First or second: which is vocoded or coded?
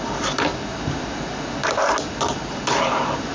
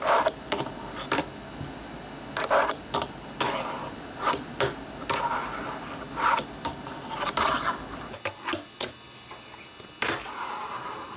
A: first